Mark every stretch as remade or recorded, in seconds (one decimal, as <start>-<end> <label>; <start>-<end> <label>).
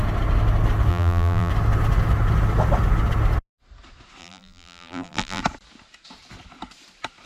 0.0-0.9 recorded; 0.9-1.5 remade; 1.5-4.2 recorded; 4.2-5.4 remade; 5.4-7.3 recorded